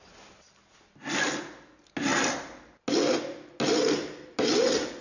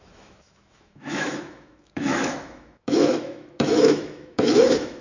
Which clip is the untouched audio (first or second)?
first